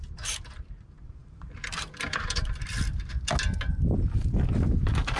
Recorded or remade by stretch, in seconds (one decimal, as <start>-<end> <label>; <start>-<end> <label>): 0.0-3.1 remade; 3.1-4.8 recorded; 4.8-5.2 remade